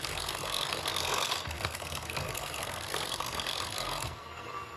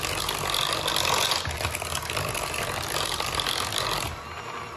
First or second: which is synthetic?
first